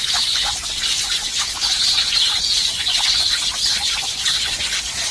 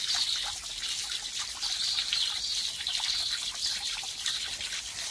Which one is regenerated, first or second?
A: first